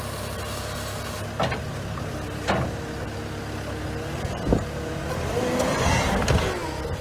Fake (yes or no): no